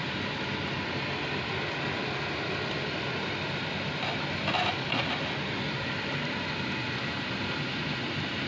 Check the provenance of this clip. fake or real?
real